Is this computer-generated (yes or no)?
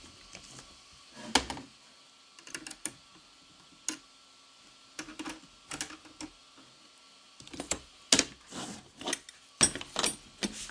no